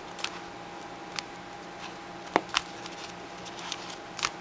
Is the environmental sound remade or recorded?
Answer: recorded